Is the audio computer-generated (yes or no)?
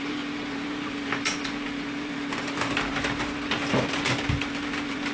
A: yes